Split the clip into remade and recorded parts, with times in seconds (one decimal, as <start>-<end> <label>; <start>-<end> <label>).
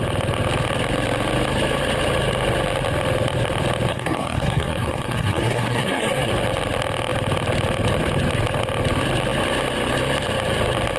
0.0-3.9 recorded; 3.9-6.3 remade; 6.3-11.0 recorded